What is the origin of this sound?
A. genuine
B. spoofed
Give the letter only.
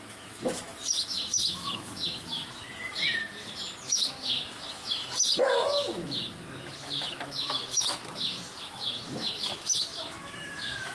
B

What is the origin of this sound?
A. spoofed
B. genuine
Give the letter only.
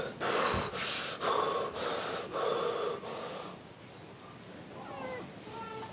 B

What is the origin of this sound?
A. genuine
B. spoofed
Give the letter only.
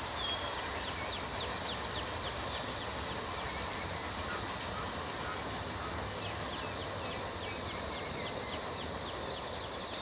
A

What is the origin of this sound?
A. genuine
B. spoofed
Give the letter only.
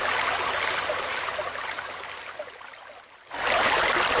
A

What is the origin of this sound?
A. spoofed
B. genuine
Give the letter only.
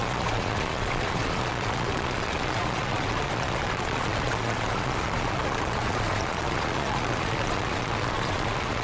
A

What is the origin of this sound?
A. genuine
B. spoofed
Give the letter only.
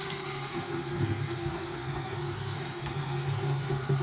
B